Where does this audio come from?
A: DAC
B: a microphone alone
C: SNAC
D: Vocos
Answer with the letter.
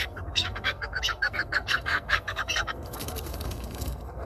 C